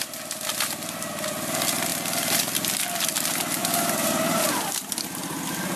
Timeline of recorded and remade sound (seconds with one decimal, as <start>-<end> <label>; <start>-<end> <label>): 0.0-1.9 recorded; 1.9-2.4 remade; 2.4-3.6 recorded; 3.6-4.5 remade; 4.5-5.8 recorded